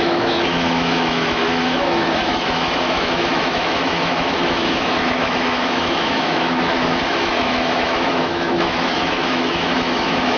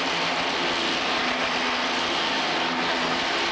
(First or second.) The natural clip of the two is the second